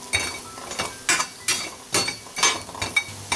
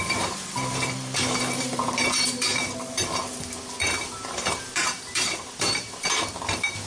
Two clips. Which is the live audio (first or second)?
first